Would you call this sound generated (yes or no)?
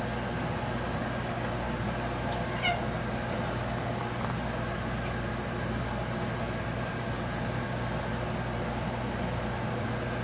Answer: no